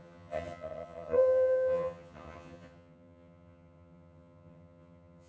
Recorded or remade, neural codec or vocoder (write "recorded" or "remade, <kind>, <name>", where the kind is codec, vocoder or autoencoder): remade, vocoder, HiFi-GAN